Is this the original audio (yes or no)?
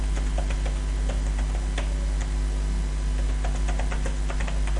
yes